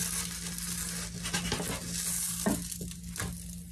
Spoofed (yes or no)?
no